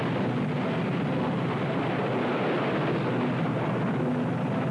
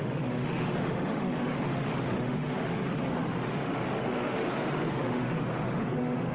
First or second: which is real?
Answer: first